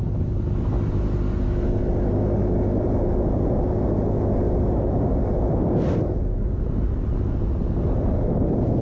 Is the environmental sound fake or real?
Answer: real